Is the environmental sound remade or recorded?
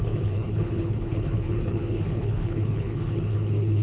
remade